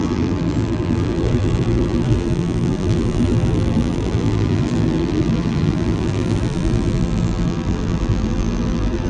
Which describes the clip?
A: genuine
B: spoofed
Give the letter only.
B